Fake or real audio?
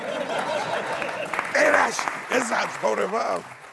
fake